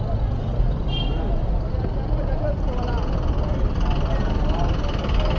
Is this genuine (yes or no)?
yes